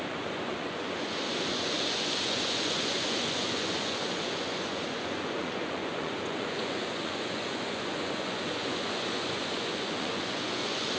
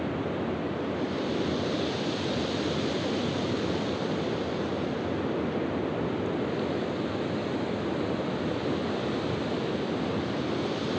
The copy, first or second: first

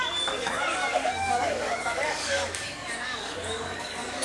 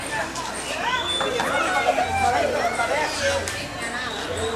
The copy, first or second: first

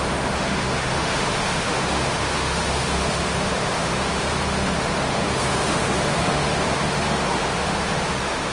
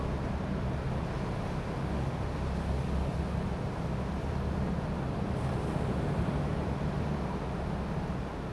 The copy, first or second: first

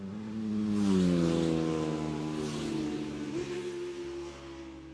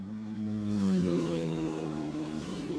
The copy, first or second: second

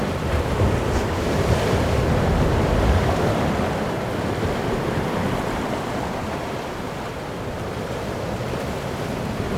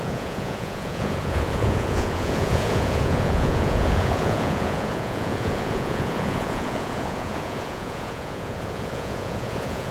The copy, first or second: second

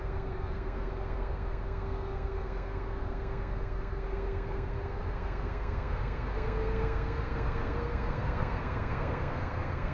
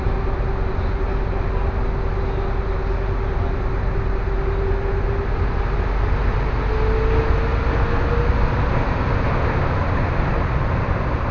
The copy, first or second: first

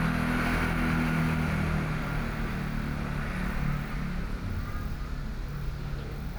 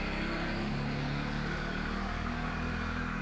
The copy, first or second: second